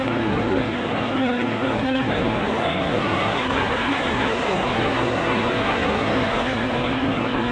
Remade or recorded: remade